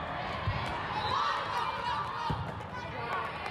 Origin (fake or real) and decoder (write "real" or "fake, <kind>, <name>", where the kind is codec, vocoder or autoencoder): real